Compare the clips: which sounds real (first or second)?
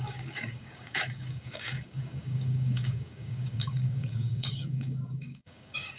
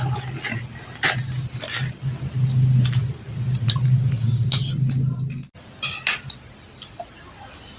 second